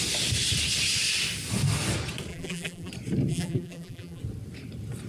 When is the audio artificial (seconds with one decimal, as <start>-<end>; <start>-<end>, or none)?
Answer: 2.3-2.9; 3.3-4.2